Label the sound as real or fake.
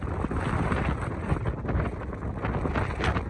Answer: real